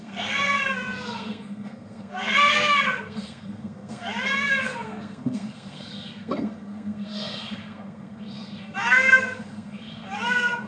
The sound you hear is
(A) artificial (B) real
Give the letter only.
A